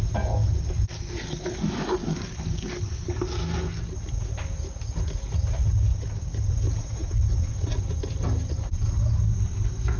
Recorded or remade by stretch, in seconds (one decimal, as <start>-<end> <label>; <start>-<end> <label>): 0.0-7.0 recorded; 7.0-7.8 remade; 7.8-10.0 recorded